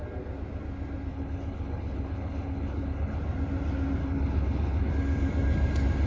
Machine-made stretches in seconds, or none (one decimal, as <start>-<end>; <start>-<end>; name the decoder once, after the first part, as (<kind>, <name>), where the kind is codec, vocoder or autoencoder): 1.1-3.2 (codec, HILCodec); 4.0-4.9